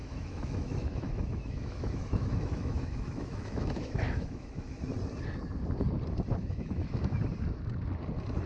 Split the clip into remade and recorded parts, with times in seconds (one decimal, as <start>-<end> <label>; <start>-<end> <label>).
0.0-4.8 remade; 4.8-6.4 recorded; 6.4-7.2 remade; 7.2-8.5 recorded